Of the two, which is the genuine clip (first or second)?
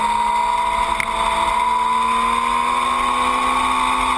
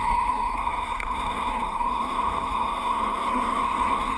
first